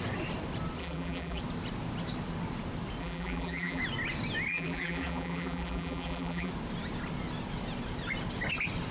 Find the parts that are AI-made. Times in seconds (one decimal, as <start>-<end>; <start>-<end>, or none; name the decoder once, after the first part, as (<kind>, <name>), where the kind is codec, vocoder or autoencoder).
0.8-1.4 (vocoder, BigVGAN v2); 3.0-3.8; 4.5-6.5